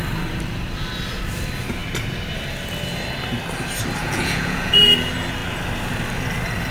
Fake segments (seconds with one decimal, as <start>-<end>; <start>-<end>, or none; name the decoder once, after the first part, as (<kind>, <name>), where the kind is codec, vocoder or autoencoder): 4.0-4.8 (vocoder, Vocos)

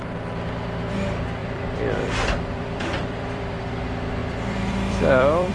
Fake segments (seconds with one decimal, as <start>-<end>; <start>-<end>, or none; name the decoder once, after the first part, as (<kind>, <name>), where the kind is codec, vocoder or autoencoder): 1.4-3.8 (vocoder, BigVGAN v2); 4.2-5.5

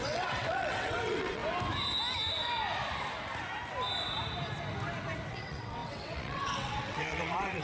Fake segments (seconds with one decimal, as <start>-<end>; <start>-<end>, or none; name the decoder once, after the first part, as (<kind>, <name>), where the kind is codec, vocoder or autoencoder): 0.0-1.4 (vocoder, WaveNeXt); 5.3-7.6

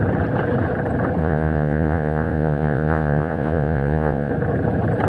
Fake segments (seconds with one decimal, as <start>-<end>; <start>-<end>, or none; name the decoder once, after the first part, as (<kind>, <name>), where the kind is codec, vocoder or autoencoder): 1.2-4.3 (vocoder, Vocos)

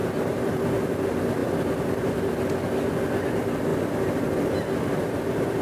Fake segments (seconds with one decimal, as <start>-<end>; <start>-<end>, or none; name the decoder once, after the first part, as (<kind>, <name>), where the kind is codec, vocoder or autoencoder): 0.0-0.6 (vocoder, BigVGAN v2)

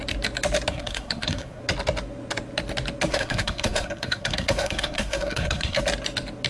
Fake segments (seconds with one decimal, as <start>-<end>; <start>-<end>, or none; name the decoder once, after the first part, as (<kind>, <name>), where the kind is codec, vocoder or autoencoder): 0.7-1.6 (codec, SNAC); 3.1-5.8

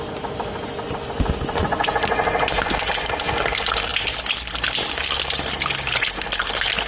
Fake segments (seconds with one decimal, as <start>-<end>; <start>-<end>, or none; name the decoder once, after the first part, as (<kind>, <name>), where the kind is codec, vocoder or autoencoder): none